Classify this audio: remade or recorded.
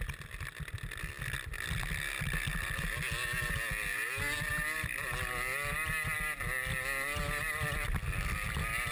recorded